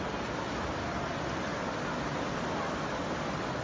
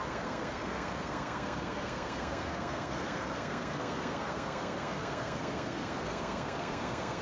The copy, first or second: second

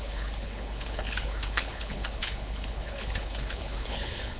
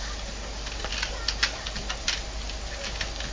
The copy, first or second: first